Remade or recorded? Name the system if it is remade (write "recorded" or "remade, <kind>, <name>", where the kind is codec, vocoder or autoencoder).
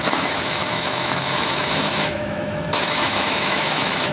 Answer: remade, autoencoder, DAC-VAE